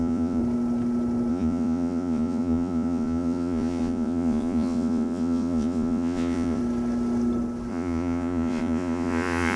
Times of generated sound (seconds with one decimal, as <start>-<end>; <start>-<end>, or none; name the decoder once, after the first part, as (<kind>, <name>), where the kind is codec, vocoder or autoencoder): 0.0-0.4 (vocoder, Vocos); 1.3-6.6; 7.7-9.6